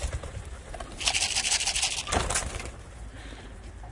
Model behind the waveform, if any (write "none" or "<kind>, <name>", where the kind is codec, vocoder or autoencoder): none